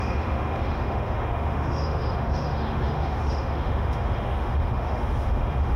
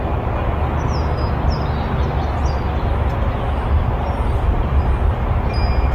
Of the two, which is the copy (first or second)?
first